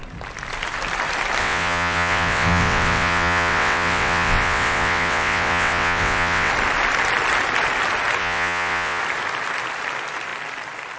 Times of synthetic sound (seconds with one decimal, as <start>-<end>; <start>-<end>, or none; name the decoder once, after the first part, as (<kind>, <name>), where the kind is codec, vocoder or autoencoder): 1.4-6.5 (vocoder, WaveNeXt); 8.2-9.0